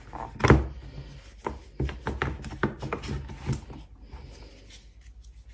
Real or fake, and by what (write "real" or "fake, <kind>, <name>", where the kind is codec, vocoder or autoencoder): real